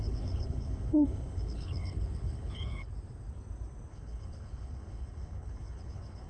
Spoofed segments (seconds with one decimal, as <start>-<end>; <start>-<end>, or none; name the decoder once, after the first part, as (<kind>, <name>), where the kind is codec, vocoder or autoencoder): 0.0-2.9 (codec, HILCodec); 3.9-6.3